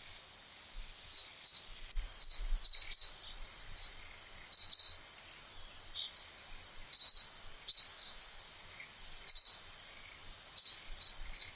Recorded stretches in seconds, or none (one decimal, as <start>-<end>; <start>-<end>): 0.0-7.9; 8.4-11.6